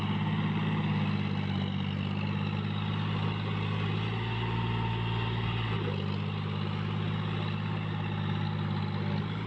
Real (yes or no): yes